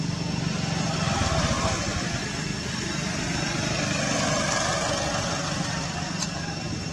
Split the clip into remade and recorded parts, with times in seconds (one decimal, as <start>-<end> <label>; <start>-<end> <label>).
0.0-6.9 recorded